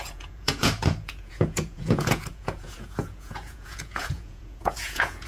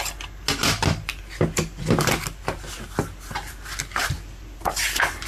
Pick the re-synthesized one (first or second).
first